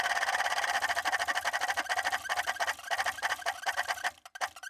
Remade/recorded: recorded